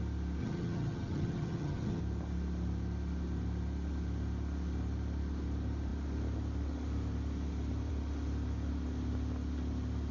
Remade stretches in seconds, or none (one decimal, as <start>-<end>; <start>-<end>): 0.4-2.0